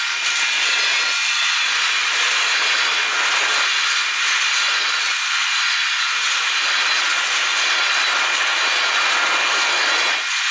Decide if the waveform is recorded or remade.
recorded